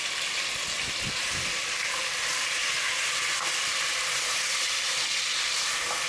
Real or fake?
real